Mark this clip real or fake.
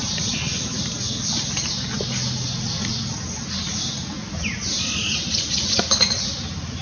real